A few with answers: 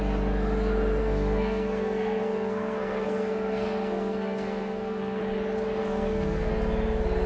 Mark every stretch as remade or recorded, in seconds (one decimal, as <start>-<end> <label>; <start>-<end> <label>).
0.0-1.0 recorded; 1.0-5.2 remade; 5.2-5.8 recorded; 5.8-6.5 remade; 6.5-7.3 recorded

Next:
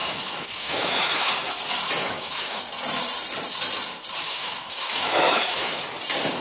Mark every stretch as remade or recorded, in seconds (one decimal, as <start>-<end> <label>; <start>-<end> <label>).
0.0-1.3 remade; 1.3-2.0 recorded; 2.0-2.6 remade; 2.6-4.2 recorded; 4.2-5.8 remade; 5.8-6.4 recorded

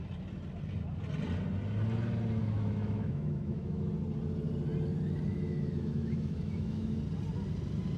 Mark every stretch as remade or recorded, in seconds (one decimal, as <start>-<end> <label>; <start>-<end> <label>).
0.0-2.4 recorded; 2.4-3.9 remade; 3.9-5.3 recorded; 5.3-7.0 remade; 7.0-8.0 recorded